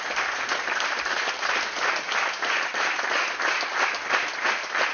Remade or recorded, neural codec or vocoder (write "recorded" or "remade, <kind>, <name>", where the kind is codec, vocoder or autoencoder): recorded